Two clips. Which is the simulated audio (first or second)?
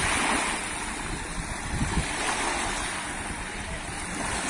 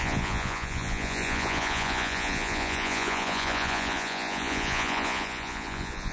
second